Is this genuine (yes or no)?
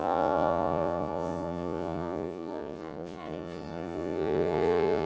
no